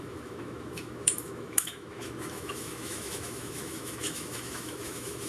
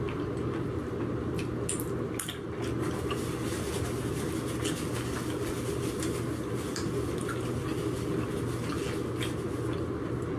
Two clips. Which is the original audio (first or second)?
second